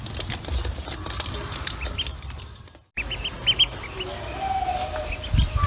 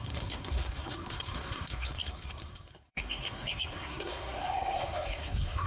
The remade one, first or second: second